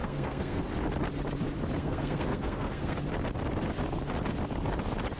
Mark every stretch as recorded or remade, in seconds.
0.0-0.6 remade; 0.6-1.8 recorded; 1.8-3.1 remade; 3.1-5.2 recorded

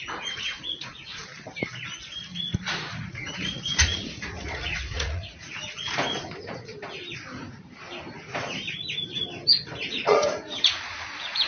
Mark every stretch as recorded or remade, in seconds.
0.0-1.2 remade; 1.2-2.2 recorded; 2.2-6.7 remade; 6.7-9.6 recorded; 9.6-11.5 remade